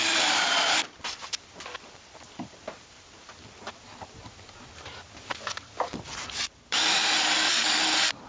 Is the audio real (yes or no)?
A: no